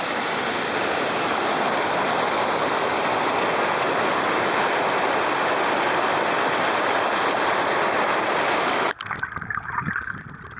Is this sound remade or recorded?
recorded